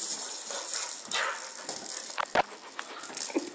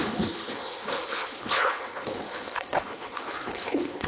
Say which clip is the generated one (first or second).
second